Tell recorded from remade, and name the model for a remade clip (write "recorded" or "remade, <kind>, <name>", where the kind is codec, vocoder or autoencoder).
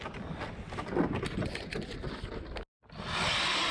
recorded